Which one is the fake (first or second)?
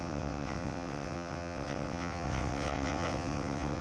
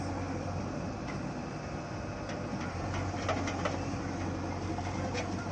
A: first